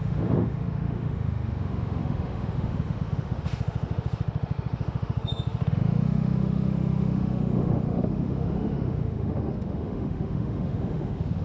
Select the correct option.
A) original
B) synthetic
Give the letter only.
B